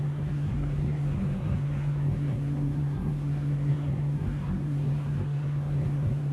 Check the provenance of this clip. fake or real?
fake